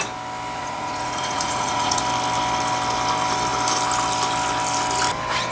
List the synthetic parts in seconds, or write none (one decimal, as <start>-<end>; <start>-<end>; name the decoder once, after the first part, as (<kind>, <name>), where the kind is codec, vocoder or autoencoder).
0.6-2.0 (vocoder, Vocos)